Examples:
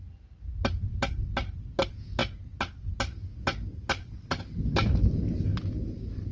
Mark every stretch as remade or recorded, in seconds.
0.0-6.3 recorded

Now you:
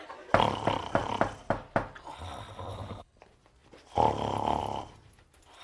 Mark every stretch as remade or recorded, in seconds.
0.0-2.7 recorded; 2.7-3.2 remade; 3.2-5.6 recorded

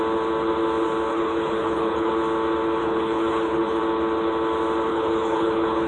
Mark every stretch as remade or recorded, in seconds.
0.0-1.1 recorded; 1.1-2.1 remade; 2.1-2.8 recorded; 2.8-3.8 remade; 3.8-4.9 recorded; 4.9-5.9 remade